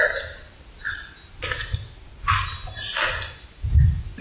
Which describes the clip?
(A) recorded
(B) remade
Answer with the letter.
A